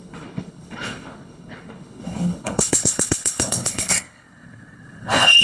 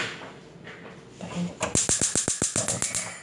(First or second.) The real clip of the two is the second